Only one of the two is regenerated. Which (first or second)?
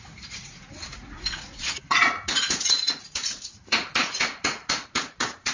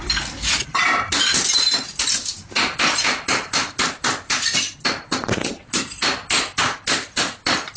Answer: first